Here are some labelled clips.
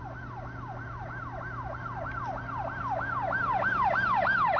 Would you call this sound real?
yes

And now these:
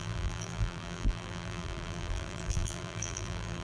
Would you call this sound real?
no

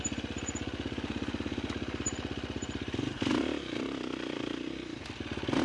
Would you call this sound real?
yes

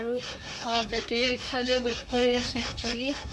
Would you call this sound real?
no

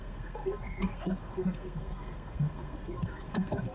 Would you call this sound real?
no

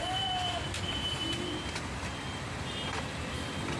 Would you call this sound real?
no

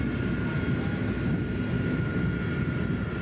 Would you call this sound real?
yes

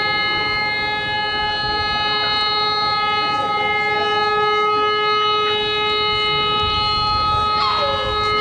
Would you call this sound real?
yes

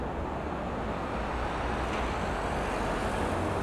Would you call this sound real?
yes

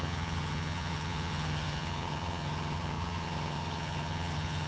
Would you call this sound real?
no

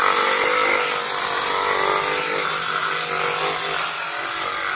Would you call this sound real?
yes